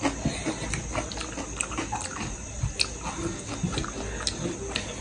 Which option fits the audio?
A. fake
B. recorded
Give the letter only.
B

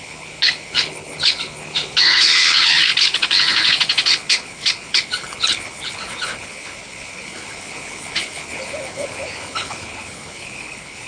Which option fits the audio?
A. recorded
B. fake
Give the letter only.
B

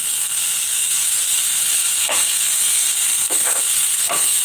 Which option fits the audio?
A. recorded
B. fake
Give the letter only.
B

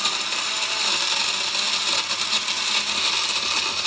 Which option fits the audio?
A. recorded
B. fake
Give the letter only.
A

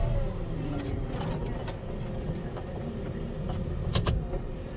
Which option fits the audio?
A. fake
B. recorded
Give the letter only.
B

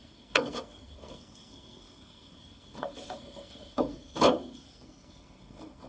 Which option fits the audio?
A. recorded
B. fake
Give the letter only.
B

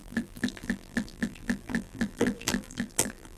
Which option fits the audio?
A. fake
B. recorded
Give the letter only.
A